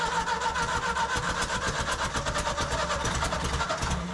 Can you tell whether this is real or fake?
real